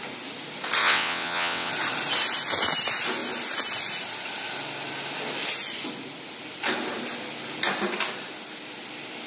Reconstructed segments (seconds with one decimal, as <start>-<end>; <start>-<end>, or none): 0.8-1.7